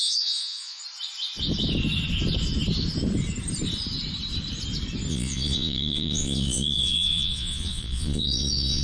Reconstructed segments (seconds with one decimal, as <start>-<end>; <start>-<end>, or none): 0.0-0.8; 5.1-8.8